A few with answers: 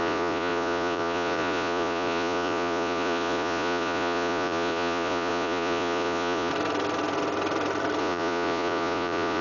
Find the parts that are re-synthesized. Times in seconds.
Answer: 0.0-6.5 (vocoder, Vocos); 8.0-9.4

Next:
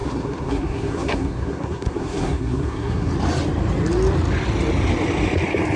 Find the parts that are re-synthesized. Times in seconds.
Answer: 0.0-3.1 (codec, SNAC)

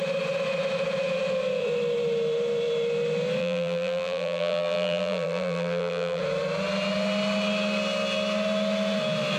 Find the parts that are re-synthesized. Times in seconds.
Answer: 3.4-6.2 (vocoder, BigVGAN v2)

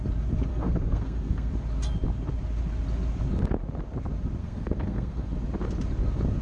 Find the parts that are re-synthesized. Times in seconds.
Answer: 0.5-1.5 (codec, SNAC); 4.4-5.3

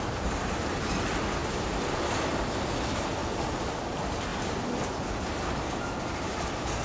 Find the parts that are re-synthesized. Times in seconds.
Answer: none